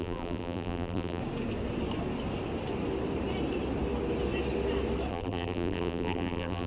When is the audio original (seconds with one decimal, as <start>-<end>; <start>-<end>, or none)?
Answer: 1.2-5.1